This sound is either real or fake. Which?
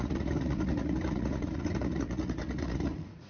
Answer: fake